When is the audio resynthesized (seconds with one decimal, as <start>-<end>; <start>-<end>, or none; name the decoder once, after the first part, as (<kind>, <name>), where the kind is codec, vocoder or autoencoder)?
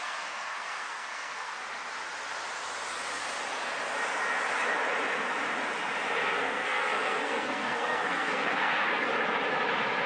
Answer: 0.0-1.6 (codec, SNAC); 6.2-9.1